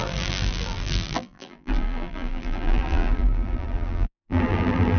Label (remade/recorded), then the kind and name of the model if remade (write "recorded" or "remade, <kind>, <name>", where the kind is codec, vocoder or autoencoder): remade, vocoder, BigVGAN v2